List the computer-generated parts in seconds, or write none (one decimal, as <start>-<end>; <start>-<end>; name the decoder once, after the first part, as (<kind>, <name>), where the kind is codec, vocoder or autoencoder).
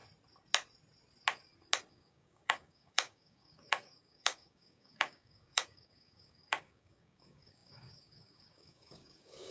1.9-9.5 (codec, DAC)